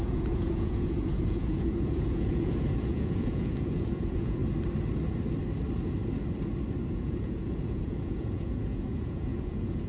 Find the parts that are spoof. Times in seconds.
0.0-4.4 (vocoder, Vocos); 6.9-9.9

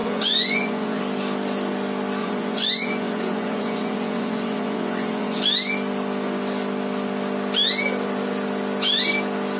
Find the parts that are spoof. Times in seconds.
0.0-1.0 (vocoder, Vocos); 2.2-5.4